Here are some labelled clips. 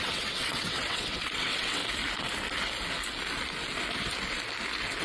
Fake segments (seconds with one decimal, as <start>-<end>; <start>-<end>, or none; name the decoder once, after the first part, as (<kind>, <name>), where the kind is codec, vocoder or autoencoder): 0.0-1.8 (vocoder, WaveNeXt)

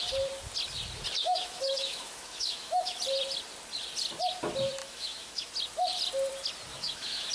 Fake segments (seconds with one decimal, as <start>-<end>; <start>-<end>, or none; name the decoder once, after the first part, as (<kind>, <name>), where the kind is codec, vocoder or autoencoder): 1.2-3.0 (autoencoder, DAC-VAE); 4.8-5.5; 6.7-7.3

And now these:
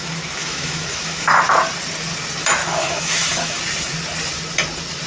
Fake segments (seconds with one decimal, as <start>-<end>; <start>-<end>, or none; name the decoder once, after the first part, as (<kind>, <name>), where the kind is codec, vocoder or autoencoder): 0.0-1.4 (autoencoder, DAC-VAE); 2.6-3.6